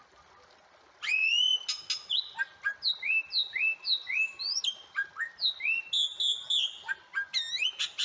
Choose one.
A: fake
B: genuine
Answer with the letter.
B